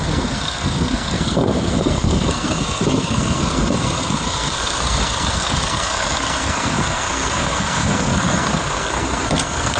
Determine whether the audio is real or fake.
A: fake